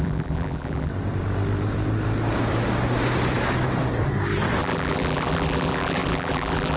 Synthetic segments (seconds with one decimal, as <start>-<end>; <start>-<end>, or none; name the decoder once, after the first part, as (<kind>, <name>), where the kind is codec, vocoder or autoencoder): 0.0-0.9 (vocoder, BigVGAN v2); 4.6-6.8